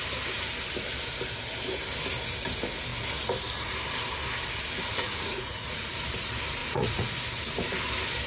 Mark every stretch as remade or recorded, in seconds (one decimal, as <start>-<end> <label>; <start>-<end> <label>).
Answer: 0.0-4.9 recorded; 4.9-5.9 remade; 5.9-6.6 recorded; 6.6-7.1 remade; 7.1-8.3 recorded